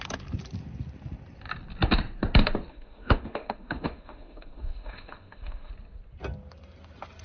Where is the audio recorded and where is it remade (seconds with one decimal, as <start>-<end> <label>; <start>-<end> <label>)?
0.0-2.7 recorded; 2.7-5.7 remade; 5.7-7.2 recorded